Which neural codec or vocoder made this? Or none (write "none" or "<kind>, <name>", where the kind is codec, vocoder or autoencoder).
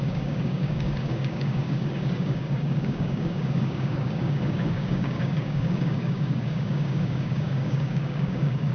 codec, DAC